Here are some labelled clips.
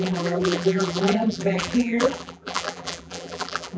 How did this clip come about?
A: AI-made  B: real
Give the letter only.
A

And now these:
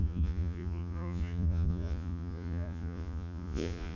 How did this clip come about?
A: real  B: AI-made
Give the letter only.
B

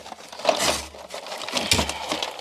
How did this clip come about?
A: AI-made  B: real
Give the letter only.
B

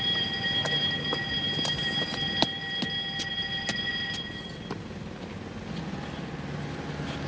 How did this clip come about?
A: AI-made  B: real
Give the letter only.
B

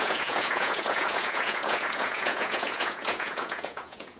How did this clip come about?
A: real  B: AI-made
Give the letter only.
B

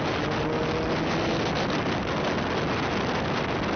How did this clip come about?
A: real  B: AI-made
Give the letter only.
A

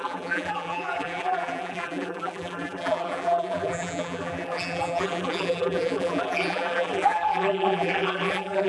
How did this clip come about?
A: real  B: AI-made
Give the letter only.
B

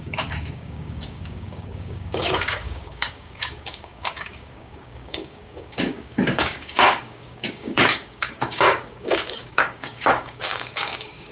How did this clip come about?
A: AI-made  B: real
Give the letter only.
A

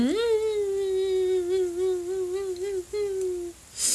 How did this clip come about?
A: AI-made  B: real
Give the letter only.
B